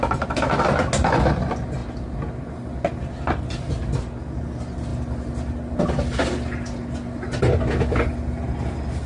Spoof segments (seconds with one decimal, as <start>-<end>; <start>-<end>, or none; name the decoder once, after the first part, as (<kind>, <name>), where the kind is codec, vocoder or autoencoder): none